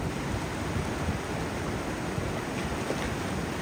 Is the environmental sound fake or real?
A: real